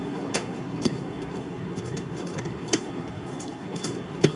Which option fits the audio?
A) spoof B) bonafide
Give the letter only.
A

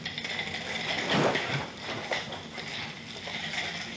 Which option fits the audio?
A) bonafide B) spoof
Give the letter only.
A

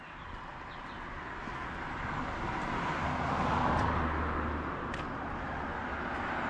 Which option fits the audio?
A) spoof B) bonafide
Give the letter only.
B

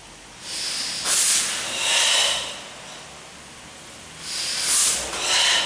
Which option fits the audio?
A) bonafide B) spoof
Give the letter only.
A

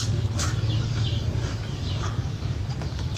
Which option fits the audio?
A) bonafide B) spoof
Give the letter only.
B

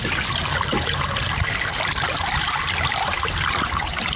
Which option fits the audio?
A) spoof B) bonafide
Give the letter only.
B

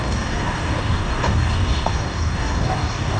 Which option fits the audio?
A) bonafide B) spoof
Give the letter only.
B